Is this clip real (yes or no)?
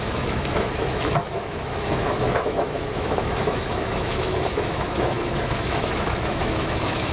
no